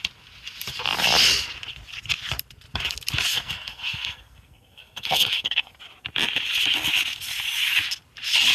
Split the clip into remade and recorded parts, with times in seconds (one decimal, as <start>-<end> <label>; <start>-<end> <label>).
0.0-3.3 recorded; 3.3-5.8 remade; 5.8-8.5 recorded